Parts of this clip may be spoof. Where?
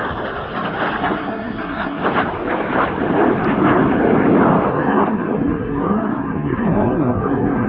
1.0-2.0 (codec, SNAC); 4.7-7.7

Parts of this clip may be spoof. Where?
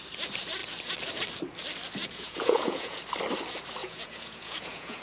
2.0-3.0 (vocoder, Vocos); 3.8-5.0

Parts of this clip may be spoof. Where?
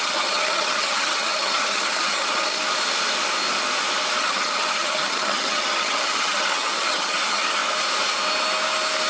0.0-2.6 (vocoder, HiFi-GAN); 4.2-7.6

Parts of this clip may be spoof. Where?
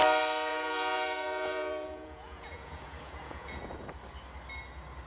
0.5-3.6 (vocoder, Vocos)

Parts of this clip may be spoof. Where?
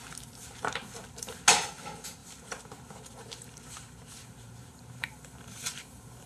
0.4-1.3 (vocoder, BigVGAN v2); 2.2-6.3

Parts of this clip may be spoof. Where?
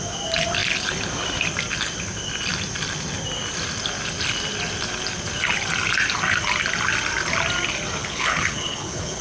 8.0-9.2 (codec, HILCodec)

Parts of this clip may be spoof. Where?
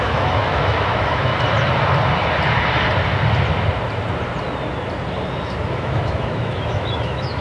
0.0-1.3 (autoencoder, DAC-VAE); 5.7-7.4